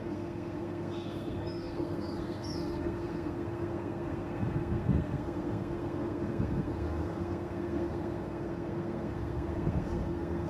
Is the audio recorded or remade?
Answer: remade